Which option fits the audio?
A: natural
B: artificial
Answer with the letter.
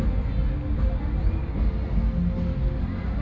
A